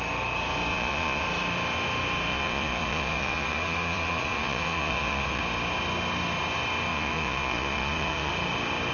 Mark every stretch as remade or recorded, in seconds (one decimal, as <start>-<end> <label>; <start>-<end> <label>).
0.0-0.7 recorded; 0.7-1.2 remade; 1.2-2.3 recorded; 2.3-5.4 remade; 5.4-6.9 recorded; 6.9-8.3 remade; 8.3-8.9 recorded